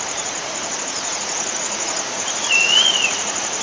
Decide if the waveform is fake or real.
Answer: fake